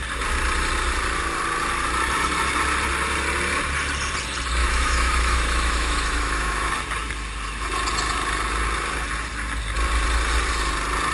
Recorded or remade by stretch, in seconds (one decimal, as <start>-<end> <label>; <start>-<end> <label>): 0.0-4.6 recorded; 4.6-6.7 remade; 6.7-11.1 recorded